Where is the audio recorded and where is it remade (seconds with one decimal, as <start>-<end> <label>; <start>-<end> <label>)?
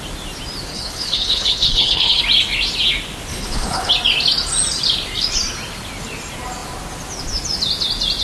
0.0-0.7 recorded; 0.7-2.2 remade; 2.2-3.3 recorded; 3.3-3.9 remade; 3.9-8.2 recorded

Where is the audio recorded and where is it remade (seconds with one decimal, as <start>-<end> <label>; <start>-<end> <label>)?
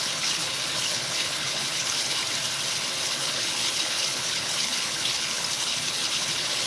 0.0-2.2 remade; 2.2-3.0 recorded; 3.0-6.7 remade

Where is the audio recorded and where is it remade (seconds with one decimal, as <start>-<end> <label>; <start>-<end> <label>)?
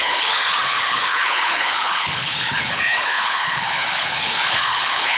0.0-5.2 remade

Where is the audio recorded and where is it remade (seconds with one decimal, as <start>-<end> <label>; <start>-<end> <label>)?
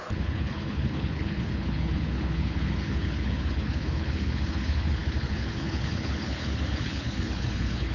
0.0-7.9 remade